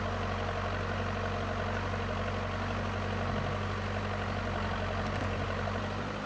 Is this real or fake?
real